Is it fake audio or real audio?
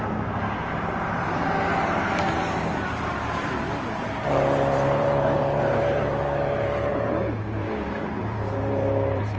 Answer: fake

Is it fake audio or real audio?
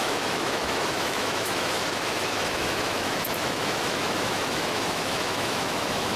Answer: fake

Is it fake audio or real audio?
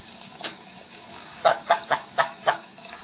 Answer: fake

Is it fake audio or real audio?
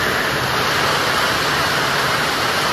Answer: real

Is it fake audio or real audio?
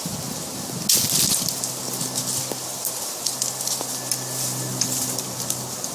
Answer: real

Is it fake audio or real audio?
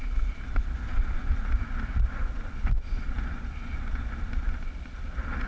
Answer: real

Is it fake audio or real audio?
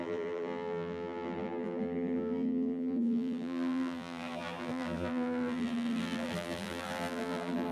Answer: fake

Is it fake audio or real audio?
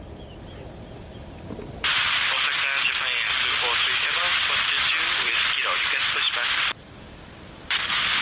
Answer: real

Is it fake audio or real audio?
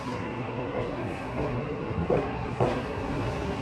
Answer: fake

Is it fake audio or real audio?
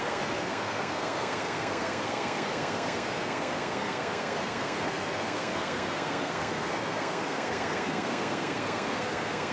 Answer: fake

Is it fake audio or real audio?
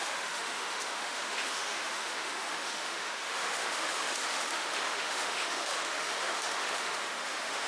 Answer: fake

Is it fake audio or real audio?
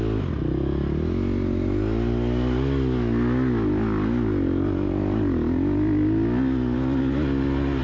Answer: real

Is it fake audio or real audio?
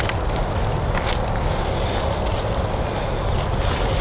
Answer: real